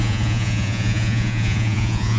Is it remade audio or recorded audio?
remade